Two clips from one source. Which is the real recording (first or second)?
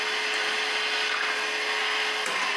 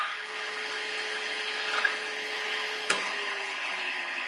first